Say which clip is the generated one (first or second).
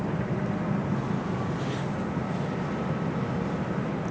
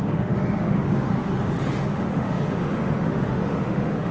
second